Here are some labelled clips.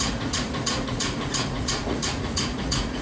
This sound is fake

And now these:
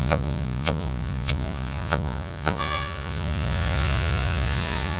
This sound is fake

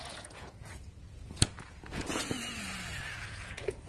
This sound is fake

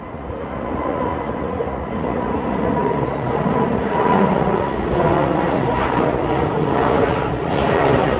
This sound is fake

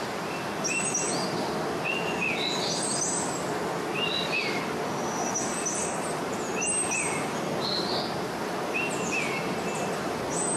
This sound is real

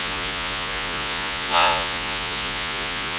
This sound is fake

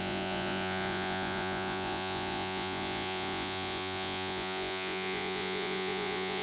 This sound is fake